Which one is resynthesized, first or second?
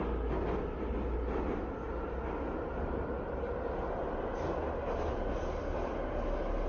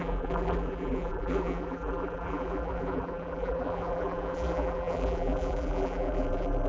second